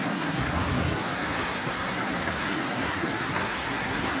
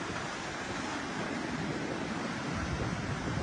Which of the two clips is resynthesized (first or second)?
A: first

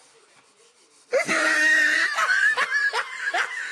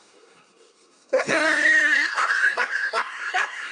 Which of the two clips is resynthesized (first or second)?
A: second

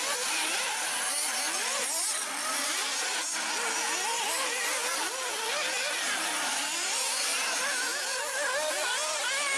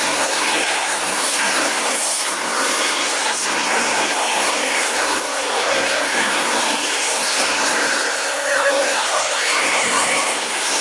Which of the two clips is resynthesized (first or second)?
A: second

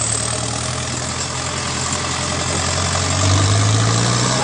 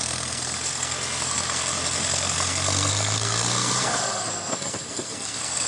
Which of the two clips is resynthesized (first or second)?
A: second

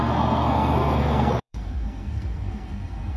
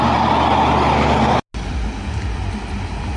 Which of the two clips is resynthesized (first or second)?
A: first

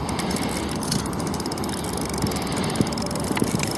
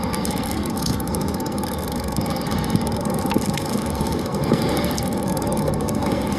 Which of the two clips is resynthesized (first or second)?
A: second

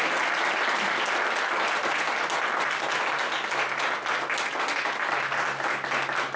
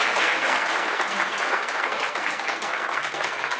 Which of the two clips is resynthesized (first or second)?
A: second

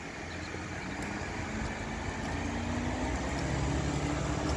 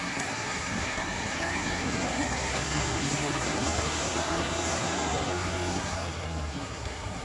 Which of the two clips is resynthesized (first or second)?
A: second